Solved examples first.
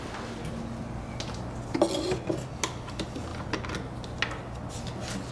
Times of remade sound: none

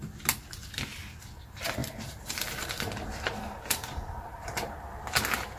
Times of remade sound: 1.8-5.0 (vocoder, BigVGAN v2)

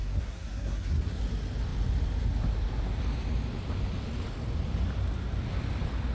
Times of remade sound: 0.0-1.2 (codec, SNAC)